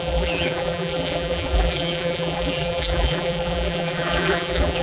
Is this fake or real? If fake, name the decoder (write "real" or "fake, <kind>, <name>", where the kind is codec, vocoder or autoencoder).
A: fake, vocoder, BigVGAN v2